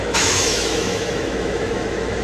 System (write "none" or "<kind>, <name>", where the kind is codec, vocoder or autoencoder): autoencoder, DAC-VAE